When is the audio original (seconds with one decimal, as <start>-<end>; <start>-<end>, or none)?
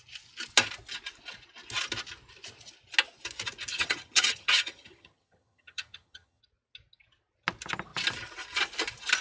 0.0-3.7; 6.4-9.2